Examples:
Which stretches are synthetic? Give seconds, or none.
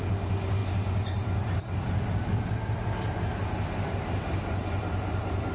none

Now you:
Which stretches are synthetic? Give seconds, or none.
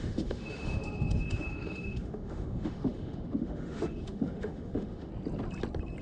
0.0-5.1 (autoencoder, DAC-VAE)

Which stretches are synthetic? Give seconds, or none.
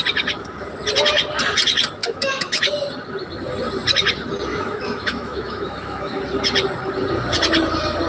2.0-2.7 (autoencoder, DAC-VAE); 4.5-6.2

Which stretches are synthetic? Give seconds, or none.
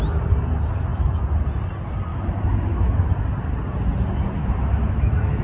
2.1-3.1 (autoencoder, DAC-VAE); 4.4-5.4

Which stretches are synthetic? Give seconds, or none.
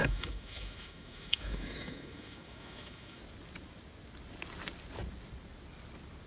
0.0-3.2 (autoencoder, DAC-VAE)